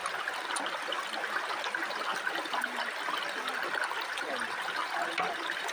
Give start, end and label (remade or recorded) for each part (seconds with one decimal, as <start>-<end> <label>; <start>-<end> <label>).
0.0-5.7 recorded